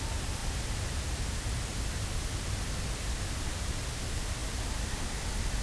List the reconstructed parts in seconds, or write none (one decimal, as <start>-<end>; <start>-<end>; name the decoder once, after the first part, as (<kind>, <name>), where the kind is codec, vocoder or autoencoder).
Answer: none